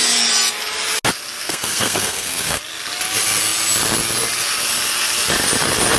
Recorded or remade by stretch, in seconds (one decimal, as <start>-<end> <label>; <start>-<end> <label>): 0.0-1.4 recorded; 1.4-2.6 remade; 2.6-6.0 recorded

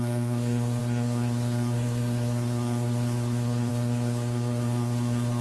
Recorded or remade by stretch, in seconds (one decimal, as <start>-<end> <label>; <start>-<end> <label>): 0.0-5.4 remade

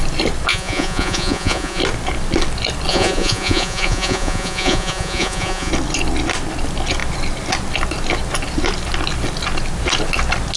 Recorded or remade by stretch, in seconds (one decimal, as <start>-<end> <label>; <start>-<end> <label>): 0.0-0.5 recorded; 0.5-1.8 remade; 1.8-2.9 recorded; 2.9-5.7 remade; 5.7-10.6 recorded

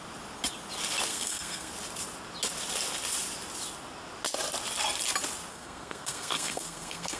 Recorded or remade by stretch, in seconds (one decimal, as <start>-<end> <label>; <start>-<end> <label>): 0.0-1.1 recorded; 1.1-1.7 remade; 1.7-5.5 recorded; 5.5-7.2 remade

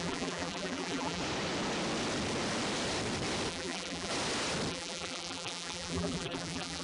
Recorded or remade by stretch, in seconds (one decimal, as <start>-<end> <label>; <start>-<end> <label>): 0.0-1.2 remade; 1.2-3.5 recorded; 3.5-4.1 remade; 4.1-4.7 recorded; 4.7-6.8 remade